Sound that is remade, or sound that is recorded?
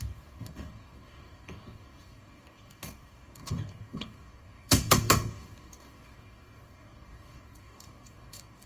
remade